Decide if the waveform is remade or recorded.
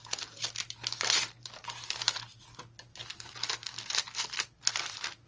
recorded